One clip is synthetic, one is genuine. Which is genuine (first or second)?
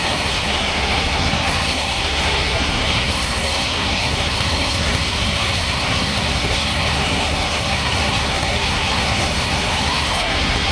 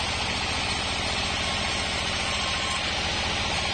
second